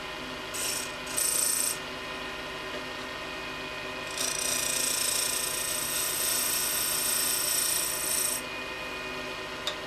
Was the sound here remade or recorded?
recorded